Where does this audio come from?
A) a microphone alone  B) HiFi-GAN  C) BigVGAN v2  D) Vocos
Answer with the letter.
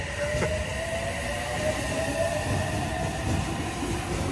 A